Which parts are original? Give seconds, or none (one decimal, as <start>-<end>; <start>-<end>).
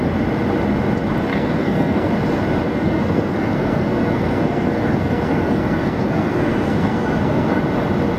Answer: 0.0-1.3; 2.1-2.7; 7.6-8.2